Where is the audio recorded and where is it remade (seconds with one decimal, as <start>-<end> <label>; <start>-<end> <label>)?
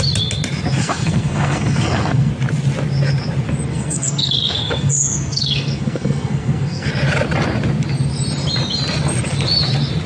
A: 0.0-0.8 recorded; 0.8-2.3 remade; 2.3-3.7 recorded; 3.7-6.9 remade; 6.9-10.1 recorded